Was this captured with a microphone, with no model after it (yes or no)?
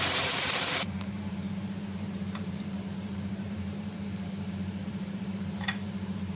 no